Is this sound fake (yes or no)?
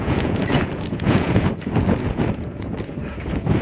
yes